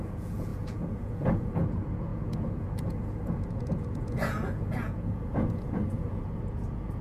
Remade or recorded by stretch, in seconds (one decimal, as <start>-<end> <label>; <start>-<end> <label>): 0.0-7.0 remade